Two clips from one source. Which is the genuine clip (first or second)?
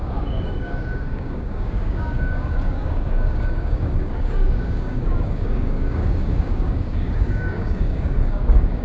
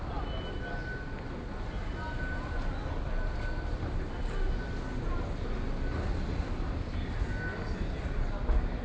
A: second